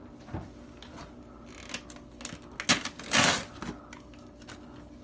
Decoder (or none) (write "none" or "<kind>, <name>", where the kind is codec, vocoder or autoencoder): none